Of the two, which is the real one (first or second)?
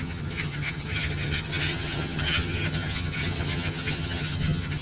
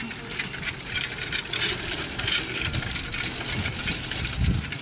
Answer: second